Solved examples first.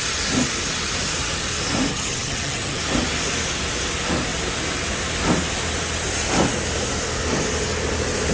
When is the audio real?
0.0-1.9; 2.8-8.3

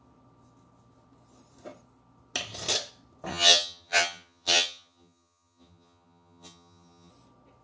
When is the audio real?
0.0-3.3; 7.1-7.6